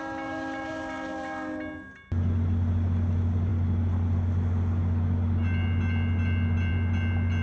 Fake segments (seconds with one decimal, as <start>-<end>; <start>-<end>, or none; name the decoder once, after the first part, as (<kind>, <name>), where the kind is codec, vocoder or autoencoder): none

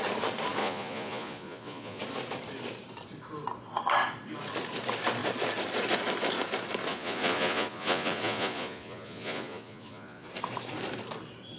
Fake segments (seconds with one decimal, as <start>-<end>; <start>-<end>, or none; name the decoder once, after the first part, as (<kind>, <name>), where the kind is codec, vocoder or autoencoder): 0.6-2.0 (vocoder, Vocos); 6.9-10.3

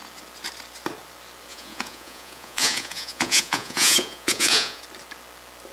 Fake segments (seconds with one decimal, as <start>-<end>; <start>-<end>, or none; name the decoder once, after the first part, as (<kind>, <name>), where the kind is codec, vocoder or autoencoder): 1.5-4.8 (vocoder, Vocos)

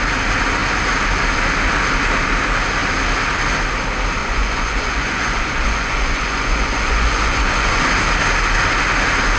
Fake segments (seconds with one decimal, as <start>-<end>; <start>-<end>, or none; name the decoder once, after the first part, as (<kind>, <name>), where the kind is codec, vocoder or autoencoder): 4.2-7.9 (vocoder, Vocos)

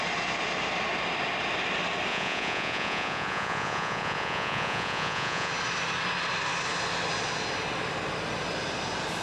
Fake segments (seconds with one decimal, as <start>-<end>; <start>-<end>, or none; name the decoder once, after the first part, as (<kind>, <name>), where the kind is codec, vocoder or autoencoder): 2.1-5.5 (vocoder, Vocos)

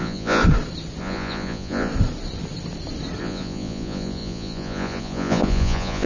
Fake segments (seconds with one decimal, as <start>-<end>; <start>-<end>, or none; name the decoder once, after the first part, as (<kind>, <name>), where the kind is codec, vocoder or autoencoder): 0.0-0.4 (vocoder, Vocos); 1.0-1.9; 3.2-6.1